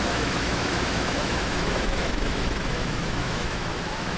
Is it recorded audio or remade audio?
remade